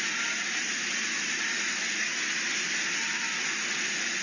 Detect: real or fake real